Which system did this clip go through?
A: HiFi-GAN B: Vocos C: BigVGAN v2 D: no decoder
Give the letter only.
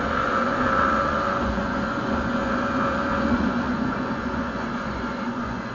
B